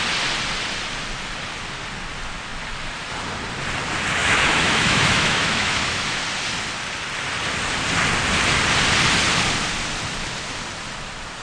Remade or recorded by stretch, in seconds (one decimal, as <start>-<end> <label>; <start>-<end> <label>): 0.0-4.2 recorded; 4.2-6.2 remade; 6.2-11.4 recorded